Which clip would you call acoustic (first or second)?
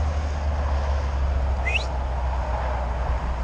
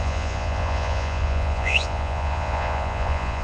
first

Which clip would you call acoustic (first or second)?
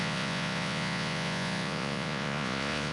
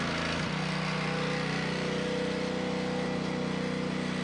second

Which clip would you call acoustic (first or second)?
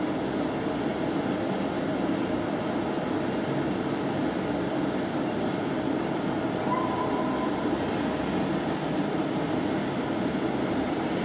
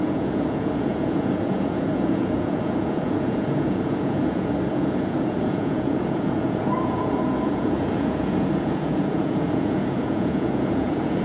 first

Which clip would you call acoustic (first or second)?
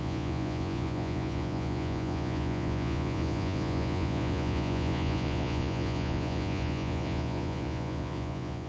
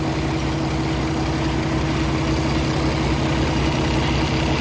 second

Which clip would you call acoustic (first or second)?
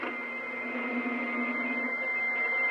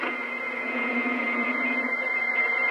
first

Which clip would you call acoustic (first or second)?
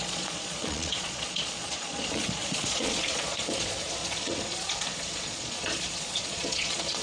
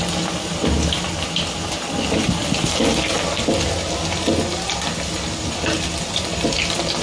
second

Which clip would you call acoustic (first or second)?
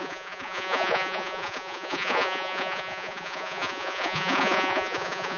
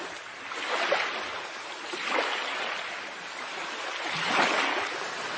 second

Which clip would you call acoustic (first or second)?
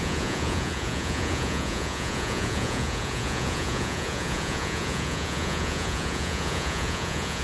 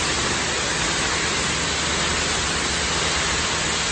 second